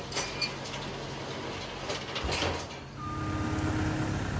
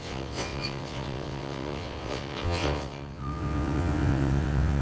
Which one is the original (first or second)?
first